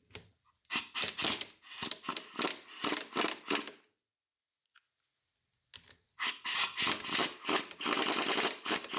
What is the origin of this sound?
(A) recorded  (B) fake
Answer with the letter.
A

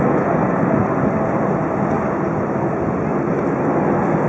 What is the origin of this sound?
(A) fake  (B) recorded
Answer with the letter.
B